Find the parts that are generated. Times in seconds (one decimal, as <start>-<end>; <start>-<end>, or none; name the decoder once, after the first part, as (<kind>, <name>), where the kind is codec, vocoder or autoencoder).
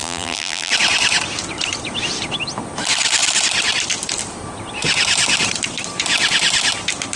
0.0-0.7 (vocoder, BigVGAN v2)